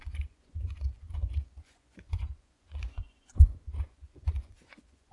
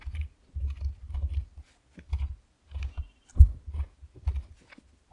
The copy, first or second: first